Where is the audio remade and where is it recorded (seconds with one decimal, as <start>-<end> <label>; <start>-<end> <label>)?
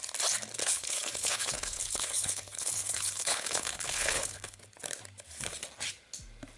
0.0-0.6 recorded; 0.6-4.6 remade; 4.6-6.6 recorded